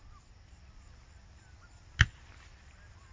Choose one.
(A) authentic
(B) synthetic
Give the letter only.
B